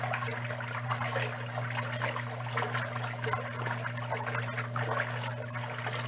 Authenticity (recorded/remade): recorded